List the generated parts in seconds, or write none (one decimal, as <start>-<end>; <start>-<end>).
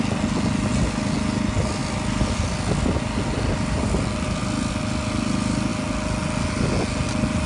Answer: none